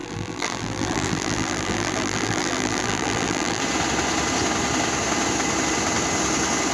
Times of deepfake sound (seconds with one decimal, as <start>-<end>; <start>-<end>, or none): 0.0-3.6